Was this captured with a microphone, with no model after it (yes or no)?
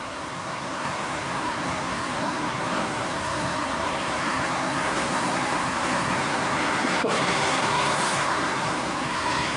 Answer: no